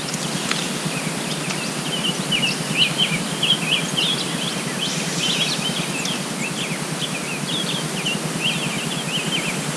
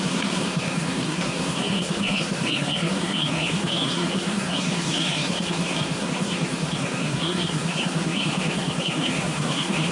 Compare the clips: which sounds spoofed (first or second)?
second